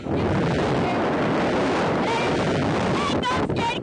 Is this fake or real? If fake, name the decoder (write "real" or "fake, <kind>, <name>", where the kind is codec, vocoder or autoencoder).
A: real